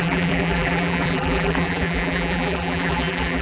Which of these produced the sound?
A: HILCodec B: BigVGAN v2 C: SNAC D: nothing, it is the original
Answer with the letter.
B